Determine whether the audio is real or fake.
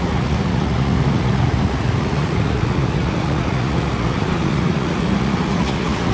fake